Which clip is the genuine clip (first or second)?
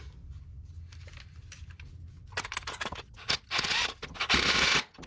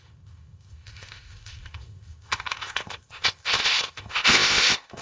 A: first